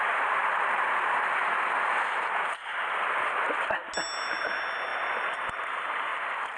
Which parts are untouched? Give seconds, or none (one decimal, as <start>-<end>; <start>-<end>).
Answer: 0.0-0.4; 1.5-4.9; 5.6-6.1